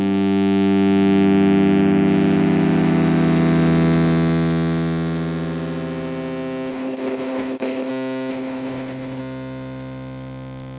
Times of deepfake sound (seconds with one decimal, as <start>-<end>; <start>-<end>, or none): 6.7-7.9; 8.3-9.2